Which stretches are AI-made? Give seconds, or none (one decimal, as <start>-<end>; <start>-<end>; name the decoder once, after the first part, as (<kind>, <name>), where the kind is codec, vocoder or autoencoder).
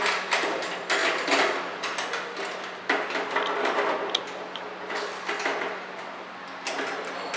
none